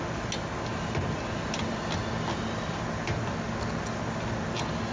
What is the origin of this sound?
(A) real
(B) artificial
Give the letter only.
A